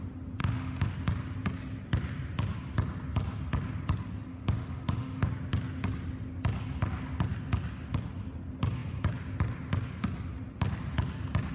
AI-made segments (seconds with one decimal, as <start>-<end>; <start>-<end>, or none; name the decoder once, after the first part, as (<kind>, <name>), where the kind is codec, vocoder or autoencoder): 0.4-0.9 (autoencoder, DAC-VAE); 4.3-5.3